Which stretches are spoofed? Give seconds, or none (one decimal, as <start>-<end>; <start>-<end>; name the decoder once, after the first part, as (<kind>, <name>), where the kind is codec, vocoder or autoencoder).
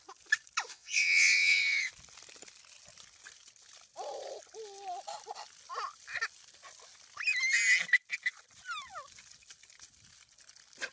0.7-1.9 (vocoder, WaveNeXt)